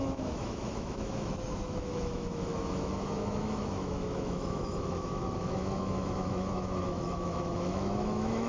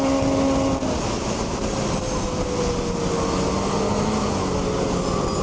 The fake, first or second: first